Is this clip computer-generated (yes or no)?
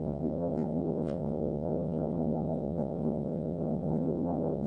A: yes